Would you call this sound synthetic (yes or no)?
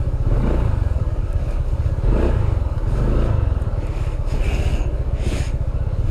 yes